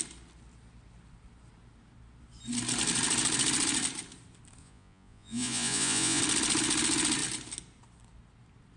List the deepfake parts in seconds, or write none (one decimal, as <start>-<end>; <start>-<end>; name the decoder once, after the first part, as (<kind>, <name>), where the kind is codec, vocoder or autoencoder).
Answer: 4.6-6.2 (vocoder, Vocos)